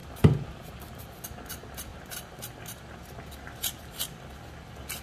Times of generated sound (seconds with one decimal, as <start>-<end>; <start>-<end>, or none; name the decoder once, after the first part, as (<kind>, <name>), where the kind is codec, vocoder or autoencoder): 0.0-1.0 (vocoder, BigVGAN v2)